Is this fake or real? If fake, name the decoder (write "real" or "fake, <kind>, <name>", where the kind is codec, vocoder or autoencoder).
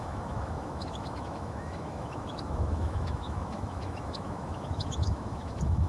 fake, autoencoder, DAC-VAE